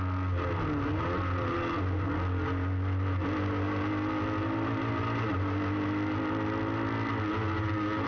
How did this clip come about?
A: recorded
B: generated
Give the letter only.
A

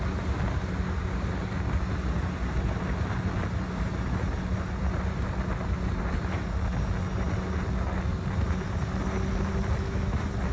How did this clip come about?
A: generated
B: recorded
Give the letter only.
B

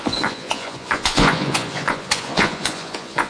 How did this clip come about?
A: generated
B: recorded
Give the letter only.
A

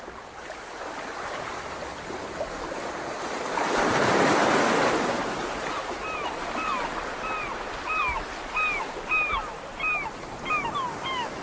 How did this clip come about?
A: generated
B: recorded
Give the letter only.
B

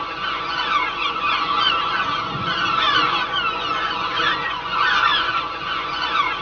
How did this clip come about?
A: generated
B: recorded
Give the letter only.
A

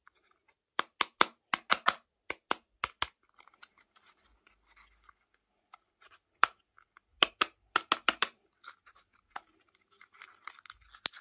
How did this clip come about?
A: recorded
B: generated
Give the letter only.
A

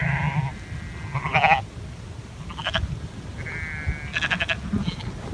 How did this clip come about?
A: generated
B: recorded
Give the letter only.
B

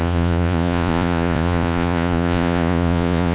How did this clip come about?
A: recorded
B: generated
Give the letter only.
B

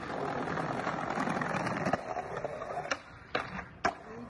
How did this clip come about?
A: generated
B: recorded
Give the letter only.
B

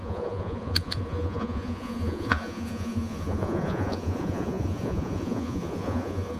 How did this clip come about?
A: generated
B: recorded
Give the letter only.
A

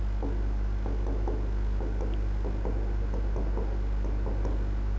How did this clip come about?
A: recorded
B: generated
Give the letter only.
A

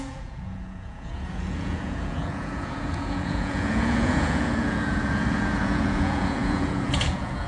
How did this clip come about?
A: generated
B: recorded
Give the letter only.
A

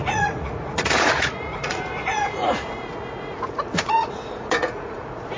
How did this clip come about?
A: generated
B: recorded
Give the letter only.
A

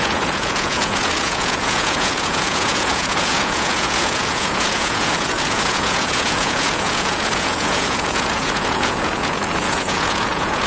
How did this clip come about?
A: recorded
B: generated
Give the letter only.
B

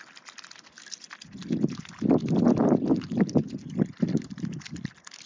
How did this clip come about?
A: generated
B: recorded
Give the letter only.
B